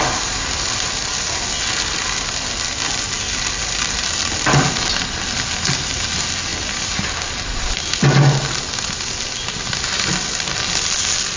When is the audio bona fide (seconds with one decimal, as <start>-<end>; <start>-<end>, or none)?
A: 0.0-11.4

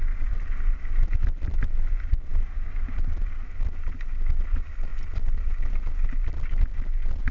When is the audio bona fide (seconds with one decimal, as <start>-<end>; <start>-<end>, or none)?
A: 0.0-7.3

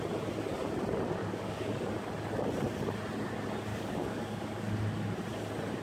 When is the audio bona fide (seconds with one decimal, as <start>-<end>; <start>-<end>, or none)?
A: 0.0-1.2; 2.1-3.7; 4.6-5.8

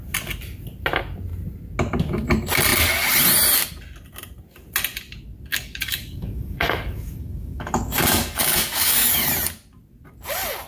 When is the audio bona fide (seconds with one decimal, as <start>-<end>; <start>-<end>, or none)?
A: 0.0-5.5; 9.3-10.7